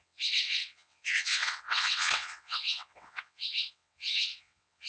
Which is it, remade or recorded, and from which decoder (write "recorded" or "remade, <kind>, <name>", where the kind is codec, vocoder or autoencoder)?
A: remade, vocoder, WaveNeXt